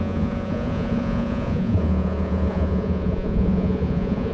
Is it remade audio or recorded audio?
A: remade